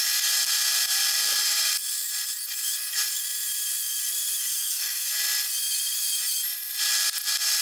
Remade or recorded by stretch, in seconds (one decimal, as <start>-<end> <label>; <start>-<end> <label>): 0.0-4.5 recorded; 4.5-5.1 remade; 5.1-7.6 recorded